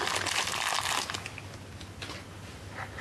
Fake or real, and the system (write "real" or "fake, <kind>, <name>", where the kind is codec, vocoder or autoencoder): real